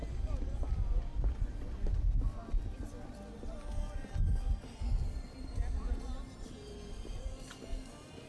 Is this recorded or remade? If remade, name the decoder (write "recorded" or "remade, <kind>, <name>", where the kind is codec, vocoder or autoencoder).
recorded